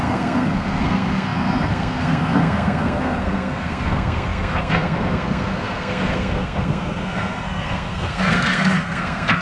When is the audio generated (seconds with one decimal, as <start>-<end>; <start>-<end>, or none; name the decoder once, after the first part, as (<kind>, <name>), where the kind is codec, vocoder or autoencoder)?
0.0-9.4 (codec, SNAC)